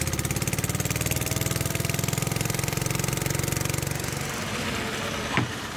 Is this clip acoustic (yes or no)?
no